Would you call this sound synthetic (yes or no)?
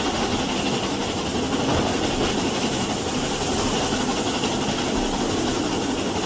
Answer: no